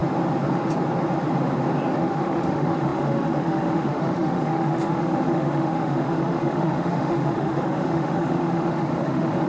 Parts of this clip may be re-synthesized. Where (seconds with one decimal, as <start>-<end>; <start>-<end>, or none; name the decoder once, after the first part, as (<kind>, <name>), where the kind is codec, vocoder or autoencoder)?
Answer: 2.0-9.5 (autoencoder, DAC-VAE)